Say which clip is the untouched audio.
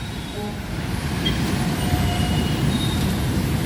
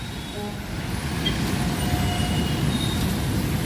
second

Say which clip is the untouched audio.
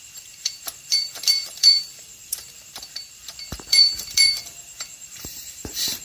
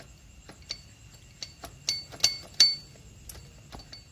second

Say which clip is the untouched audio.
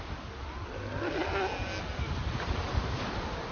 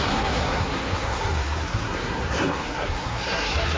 first